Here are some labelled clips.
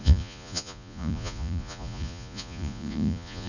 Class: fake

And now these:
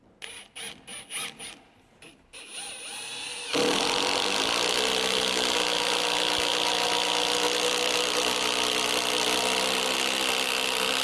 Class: real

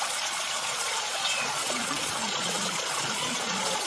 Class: fake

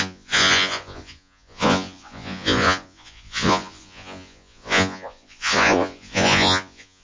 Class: fake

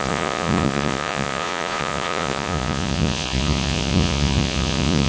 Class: fake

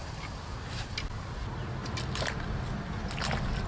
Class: real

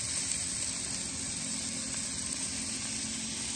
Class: real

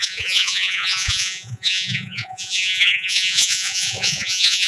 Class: fake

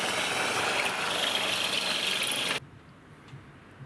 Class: real